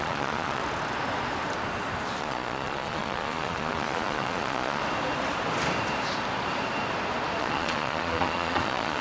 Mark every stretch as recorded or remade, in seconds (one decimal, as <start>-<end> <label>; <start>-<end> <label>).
0.0-0.6 remade; 0.6-2.2 recorded; 2.2-4.8 remade; 4.8-7.4 recorded; 7.4-9.0 remade